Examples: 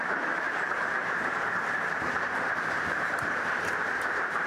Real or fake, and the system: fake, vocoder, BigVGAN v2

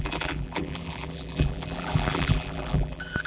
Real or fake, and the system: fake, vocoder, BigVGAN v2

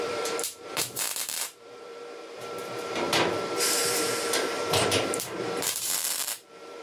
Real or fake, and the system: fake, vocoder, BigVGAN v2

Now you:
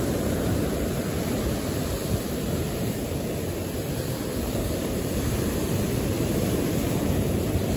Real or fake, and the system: fake, vocoder, BigVGAN v2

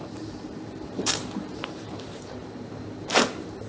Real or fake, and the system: fake, vocoder, BigVGAN v2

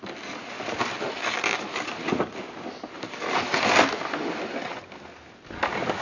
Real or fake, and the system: real